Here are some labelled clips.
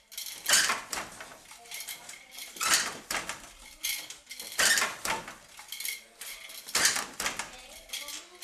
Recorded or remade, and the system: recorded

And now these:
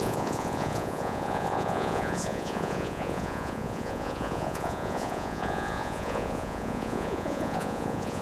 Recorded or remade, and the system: remade, vocoder, Vocos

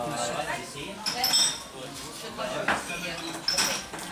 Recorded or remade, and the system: recorded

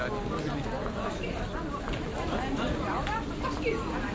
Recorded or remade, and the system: recorded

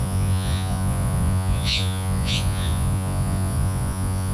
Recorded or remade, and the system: remade, vocoder, Vocos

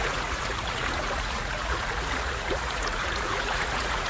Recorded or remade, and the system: remade, vocoder, Vocos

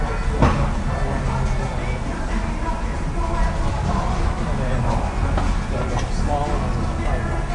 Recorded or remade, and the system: recorded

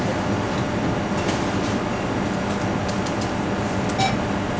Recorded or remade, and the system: recorded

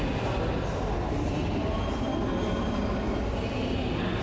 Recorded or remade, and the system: recorded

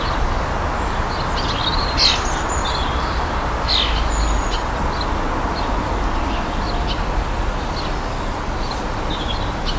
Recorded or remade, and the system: recorded